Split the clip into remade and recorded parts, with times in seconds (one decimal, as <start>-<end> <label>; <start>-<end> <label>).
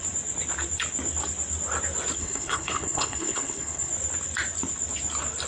0.0-2.2 recorded; 2.2-3.9 remade; 3.9-5.5 recorded